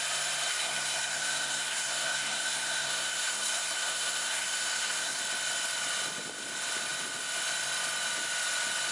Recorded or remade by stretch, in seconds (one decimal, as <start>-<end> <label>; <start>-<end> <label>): 0.0-0.5 recorded; 0.5-5.2 remade; 5.2-8.9 recorded